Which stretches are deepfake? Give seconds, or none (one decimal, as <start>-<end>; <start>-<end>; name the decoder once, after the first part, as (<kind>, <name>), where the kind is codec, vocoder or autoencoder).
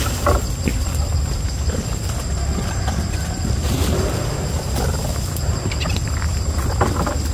0.7-5.1 (vocoder, BigVGAN v2)